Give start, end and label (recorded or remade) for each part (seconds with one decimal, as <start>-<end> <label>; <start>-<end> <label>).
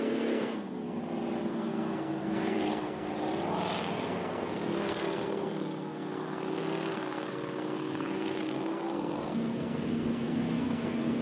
0.0-1.0 remade; 1.0-1.5 recorded; 1.5-3.1 remade; 3.1-3.8 recorded; 3.8-11.2 remade